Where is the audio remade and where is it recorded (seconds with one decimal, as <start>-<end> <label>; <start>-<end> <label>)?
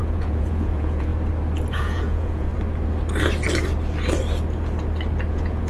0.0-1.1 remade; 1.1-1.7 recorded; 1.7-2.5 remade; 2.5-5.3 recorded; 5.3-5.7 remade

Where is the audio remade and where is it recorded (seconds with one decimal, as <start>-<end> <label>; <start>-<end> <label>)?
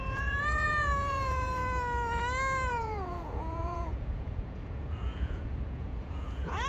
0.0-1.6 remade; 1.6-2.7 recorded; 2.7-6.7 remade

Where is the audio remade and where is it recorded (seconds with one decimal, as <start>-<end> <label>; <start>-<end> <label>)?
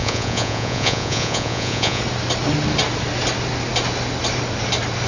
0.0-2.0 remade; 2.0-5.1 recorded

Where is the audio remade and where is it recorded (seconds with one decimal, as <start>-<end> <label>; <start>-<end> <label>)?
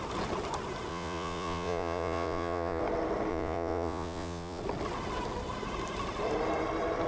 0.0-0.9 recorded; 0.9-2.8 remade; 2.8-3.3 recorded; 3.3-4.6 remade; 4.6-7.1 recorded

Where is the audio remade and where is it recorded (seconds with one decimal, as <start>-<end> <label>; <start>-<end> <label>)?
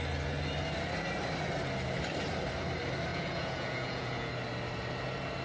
0.0-3.1 recorded; 3.1-4.3 remade; 4.3-5.4 recorded